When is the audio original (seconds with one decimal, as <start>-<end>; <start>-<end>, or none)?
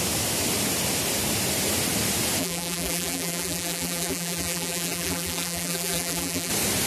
0.0-2.4; 6.5-6.9